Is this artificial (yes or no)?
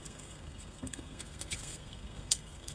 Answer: yes